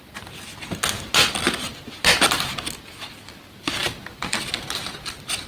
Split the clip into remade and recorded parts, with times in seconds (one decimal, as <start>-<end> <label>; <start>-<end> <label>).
0.0-5.5 recorded